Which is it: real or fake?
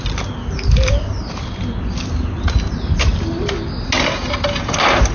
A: real